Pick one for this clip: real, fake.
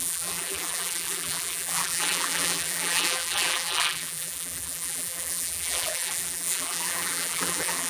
fake